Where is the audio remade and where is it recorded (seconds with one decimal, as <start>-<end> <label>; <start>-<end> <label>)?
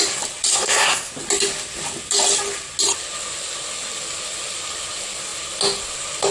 0.0-0.5 recorded; 0.5-1.1 remade; 1.1-6.3 recorded